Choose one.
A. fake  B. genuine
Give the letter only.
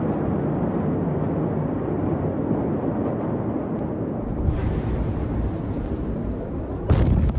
B